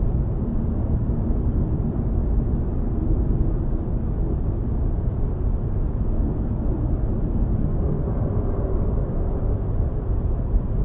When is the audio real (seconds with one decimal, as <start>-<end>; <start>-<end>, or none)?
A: 0.0-7.7; 9.2-10.8